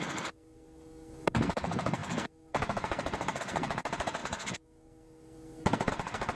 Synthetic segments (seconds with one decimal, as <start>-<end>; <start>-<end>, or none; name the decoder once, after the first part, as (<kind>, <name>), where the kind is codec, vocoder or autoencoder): 0.0-6.4 (codec, SNAC)